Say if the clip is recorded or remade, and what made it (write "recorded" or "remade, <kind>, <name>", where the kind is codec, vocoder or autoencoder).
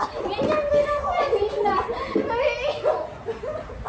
recorded